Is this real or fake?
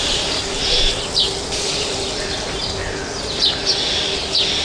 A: real